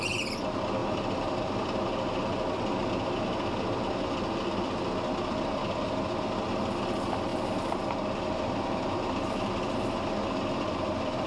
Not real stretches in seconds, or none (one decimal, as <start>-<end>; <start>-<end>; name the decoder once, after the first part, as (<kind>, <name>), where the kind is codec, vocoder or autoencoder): none